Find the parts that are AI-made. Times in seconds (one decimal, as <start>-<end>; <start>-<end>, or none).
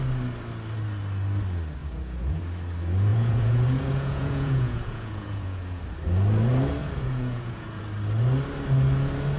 1.8-2.4; 3.1-5.8; 6.8-7.8